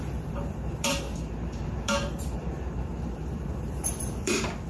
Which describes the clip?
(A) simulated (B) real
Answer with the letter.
A